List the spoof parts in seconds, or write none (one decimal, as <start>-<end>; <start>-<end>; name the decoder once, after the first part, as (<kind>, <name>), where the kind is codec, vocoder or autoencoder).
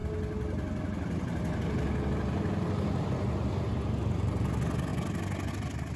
none